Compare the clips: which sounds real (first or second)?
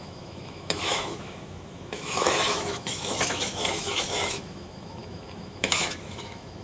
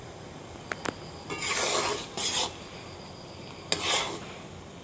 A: second